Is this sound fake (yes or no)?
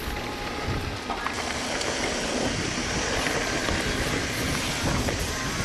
yes